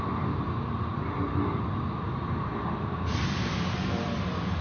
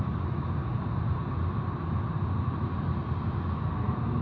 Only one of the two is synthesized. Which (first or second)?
first